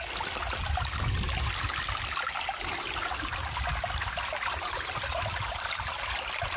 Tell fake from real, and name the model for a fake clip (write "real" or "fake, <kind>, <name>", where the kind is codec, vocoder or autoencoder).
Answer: real